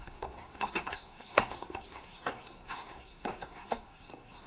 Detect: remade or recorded remade